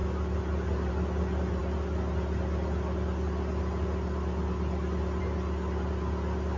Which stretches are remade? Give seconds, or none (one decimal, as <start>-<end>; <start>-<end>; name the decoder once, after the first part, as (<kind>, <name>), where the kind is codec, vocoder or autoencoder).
none